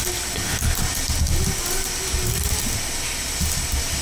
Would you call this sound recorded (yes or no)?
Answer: yes